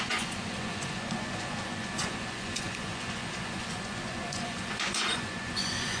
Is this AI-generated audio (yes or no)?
yes